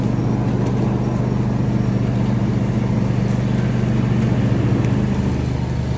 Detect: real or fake real